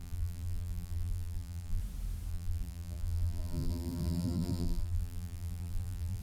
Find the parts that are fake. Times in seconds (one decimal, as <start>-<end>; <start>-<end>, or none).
0.0-1.8; 2.3-6.2